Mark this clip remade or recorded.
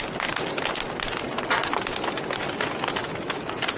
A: recorded